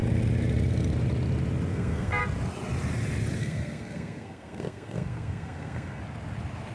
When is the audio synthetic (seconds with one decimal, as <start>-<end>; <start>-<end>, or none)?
1.7-2.2; 3.4-6.0